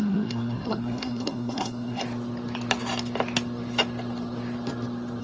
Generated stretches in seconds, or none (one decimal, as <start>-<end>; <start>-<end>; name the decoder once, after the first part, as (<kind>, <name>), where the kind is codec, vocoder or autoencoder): 0.0-2.0 (codec, SNAC)